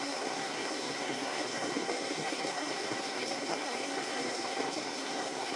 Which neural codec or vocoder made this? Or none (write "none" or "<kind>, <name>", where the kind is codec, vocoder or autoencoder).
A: codec, SNAC